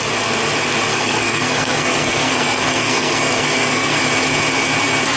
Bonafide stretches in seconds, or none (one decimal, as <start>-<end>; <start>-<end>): 0.0-0.9; 4.0-5.2